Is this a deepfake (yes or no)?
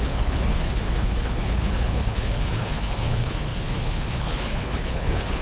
yes